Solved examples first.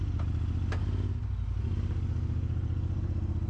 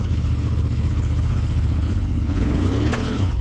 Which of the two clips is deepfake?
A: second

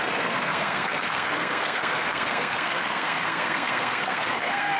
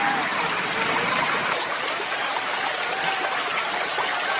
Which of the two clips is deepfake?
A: first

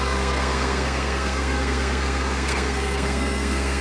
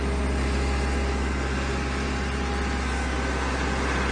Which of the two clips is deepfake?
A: first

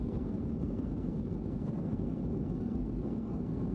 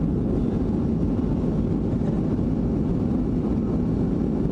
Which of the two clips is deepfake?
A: first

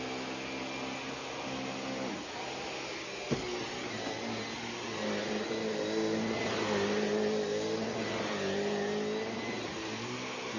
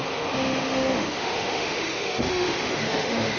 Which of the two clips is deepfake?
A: second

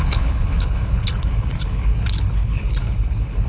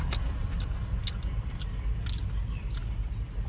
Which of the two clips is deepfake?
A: first